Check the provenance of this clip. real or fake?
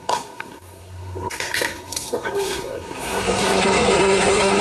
fake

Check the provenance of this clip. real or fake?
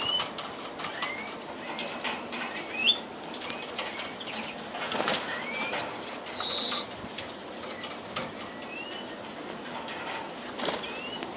real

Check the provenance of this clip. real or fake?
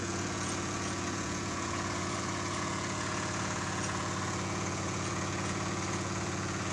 fake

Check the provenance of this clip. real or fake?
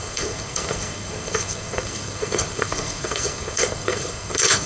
fake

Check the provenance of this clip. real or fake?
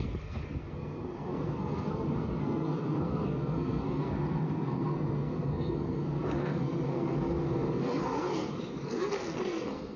fake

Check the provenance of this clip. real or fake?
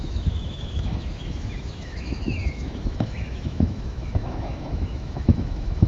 fake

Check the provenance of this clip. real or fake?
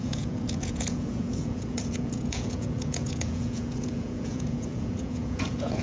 fake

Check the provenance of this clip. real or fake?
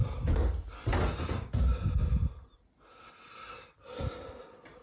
real